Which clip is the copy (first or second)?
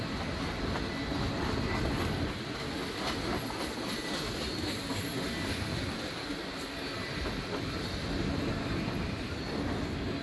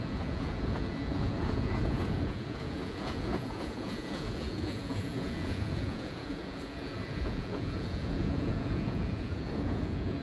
second